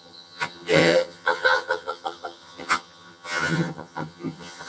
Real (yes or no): no